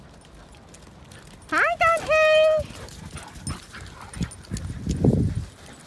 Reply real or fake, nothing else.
real